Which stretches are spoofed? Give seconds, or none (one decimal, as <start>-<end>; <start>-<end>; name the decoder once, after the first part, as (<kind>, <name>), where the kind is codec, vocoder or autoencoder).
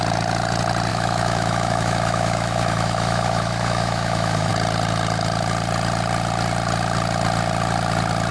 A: 0.9-4.5 (autoencoder, DAC-VAE)